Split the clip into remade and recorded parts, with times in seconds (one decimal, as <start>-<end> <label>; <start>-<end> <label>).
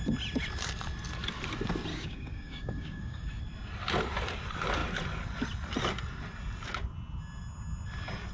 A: 0.0-1.9 recorded; 1.9-3.4 remade; 3.4-8.3 recorded